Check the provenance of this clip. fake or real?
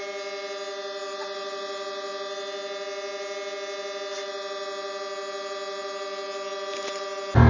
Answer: real